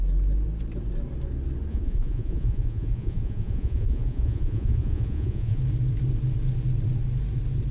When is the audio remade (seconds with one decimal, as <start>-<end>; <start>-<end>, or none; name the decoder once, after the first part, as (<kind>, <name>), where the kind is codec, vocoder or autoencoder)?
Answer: 1.7-5.6 (vocoder, Vocos)